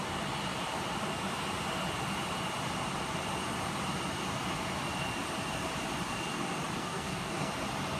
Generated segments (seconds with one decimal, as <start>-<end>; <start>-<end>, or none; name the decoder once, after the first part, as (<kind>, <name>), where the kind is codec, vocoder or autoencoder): 6.8-7.5 (codec, SNAC)

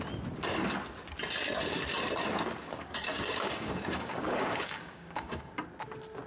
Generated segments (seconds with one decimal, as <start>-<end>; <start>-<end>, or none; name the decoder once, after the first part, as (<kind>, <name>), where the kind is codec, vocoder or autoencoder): 2.6-5.5 (codec, DAC)

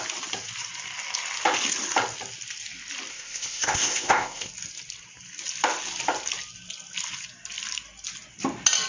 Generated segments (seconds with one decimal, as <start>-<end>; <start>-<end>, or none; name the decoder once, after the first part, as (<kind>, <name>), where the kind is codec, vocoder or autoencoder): 3.1-4.5 (codec, ZipCodec)

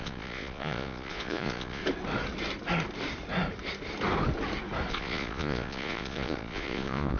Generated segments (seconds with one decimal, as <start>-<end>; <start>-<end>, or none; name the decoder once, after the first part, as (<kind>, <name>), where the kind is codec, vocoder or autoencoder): 0.0-1.8 (vocoder, Vocos); 4.9-7.2

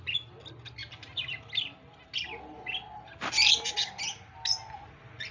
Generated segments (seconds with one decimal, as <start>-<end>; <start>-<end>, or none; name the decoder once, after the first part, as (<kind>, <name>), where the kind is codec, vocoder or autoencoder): none

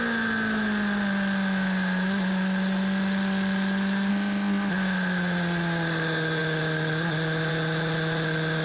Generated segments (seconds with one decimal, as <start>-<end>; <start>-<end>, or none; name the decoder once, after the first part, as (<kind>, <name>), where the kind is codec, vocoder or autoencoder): 4.1-4.7 (codec, ZipCodec)

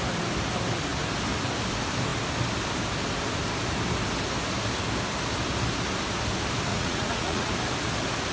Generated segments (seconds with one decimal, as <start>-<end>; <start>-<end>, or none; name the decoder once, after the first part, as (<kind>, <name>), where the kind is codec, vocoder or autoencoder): 6.7-7.5 (vocoder, Vocos)